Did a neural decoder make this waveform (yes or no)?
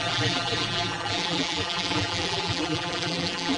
yes